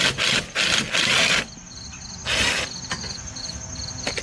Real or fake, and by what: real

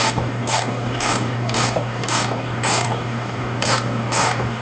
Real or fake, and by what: fake, codec, DAC